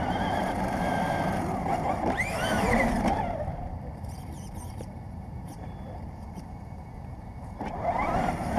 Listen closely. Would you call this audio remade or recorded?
remade